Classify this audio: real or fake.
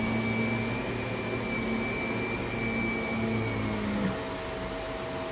real